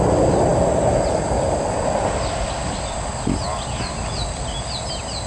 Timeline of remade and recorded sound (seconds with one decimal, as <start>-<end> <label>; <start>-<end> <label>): 0.0-5.3 recorded